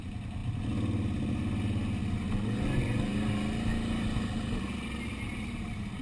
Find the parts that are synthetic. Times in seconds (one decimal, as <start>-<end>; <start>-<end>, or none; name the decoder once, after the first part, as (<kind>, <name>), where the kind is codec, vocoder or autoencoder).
none